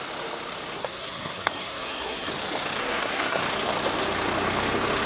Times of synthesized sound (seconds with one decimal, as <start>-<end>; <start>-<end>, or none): 0.8-2.3; 2.8-3.4